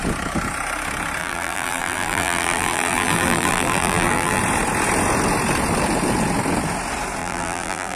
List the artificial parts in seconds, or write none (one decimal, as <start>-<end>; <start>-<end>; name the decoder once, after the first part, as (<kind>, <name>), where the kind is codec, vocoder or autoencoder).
1.2-4.4 (vocoder, BigVGAN v2); 7.2-8.0